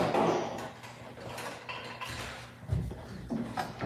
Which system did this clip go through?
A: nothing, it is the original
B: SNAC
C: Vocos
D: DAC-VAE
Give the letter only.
A